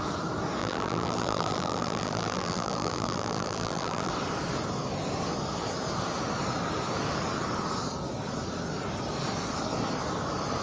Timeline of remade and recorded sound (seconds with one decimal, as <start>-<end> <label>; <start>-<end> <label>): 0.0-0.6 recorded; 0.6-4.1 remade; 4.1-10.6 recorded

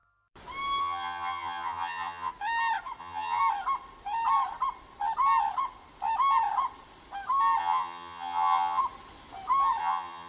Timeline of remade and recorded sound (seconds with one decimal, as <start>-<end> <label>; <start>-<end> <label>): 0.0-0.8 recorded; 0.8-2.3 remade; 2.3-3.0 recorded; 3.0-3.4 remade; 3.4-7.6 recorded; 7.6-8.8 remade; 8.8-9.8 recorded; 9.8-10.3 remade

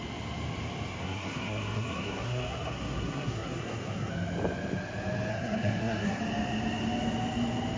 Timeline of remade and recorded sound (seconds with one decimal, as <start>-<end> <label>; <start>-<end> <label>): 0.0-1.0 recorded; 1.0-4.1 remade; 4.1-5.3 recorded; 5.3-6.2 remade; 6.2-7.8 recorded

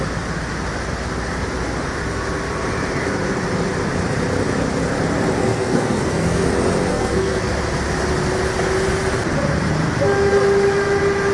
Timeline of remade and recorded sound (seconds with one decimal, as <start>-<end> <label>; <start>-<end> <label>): 0.0-5.5 recorded; 5.5-6.5 remade; 6.5-6.9 recorded; 6.9-7.5 remade; 7.5-11.3 recorded

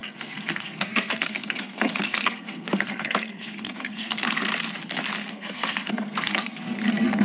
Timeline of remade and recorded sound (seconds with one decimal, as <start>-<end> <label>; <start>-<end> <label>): 0.0-4.5 remade; 4.5-5.3 recorded; 5.3-7.2 remade